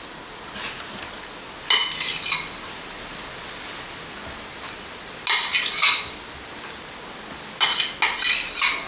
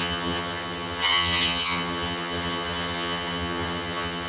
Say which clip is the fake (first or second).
second